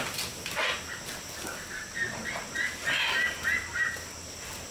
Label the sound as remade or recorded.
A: recorded